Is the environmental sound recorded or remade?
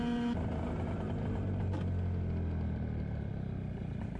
recorded